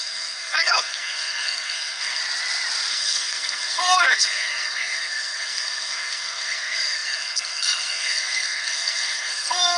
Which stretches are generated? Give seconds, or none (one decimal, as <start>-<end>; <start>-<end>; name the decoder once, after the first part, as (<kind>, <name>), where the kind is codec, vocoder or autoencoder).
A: 0.0-2.2 (codec, SNAC); 2.9-9.8